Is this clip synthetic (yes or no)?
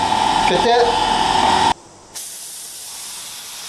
no